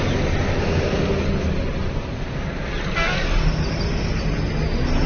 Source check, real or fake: real